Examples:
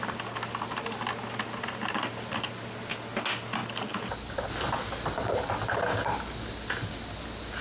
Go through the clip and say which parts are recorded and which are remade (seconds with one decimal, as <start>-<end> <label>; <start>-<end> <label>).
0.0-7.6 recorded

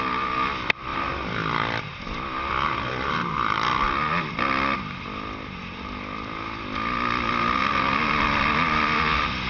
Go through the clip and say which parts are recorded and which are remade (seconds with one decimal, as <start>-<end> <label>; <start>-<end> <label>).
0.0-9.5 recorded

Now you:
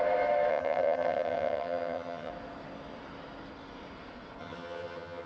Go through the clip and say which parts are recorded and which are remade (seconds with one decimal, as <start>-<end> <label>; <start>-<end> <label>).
0.0-0.5 recorded; 0.5-2.3 remade; 2.3-4.4 recorded; 4.4-5.3 remade

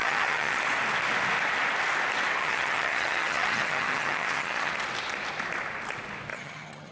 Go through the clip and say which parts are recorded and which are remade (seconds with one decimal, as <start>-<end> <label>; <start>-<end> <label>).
0.0-0.6 remade; 0.6-2.4 recorded; 2.4-4.7 remade; 4.7-6.3 recorded; 6.3-6.9 remade

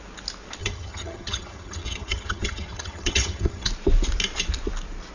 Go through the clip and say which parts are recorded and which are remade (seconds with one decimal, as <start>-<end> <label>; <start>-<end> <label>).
0.0-0.6 recorded; 0.6-3.7 remade; 3.7-5.1 recorded

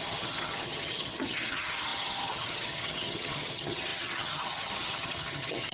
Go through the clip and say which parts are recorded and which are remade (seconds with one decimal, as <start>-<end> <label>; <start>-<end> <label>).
0.0-5.7 remade

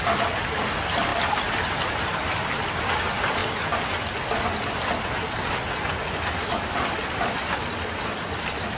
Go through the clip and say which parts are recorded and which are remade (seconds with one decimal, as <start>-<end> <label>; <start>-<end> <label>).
0.0-8.8 recorded

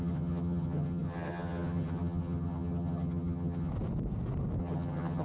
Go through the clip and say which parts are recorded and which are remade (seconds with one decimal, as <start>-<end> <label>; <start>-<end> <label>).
0.0-3.7 remade; 3.7-4.6 recorded; 4.6-5.2 remade